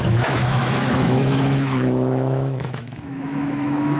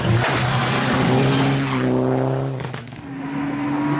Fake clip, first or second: first